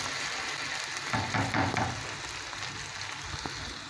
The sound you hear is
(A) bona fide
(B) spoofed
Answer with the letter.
A